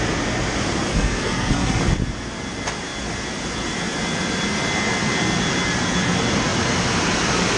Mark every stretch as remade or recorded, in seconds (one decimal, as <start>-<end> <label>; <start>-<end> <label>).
0.0-0.9 recorded; 0.9-1.8 remade; 1.8-7.6 recorded